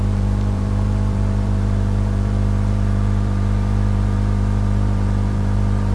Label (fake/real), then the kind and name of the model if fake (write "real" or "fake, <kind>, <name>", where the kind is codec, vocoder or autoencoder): fake, vocoder, BigVGAN v2